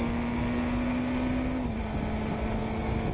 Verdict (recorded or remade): recorded